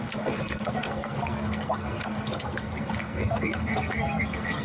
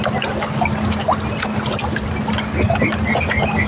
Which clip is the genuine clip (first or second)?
second